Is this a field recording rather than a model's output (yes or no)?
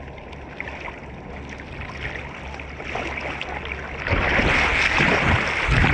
yes